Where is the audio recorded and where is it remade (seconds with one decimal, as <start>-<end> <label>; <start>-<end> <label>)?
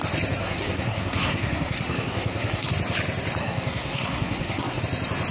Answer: 0.0-0.4 recorded; 0.4-2.7 remade; 2.7-3.4 recorded; 3.4-4.8 remade; 4.8-5.3 recorded